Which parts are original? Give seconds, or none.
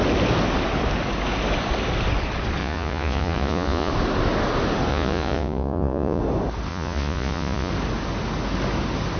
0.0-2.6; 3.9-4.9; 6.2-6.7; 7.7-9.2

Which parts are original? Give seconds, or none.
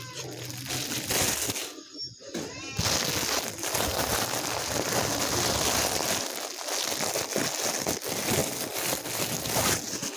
0.0-10.2